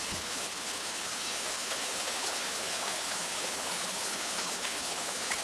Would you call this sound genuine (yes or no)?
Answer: no